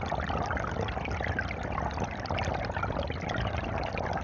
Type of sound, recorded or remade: recorded